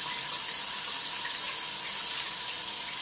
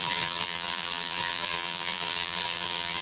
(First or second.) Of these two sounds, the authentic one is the first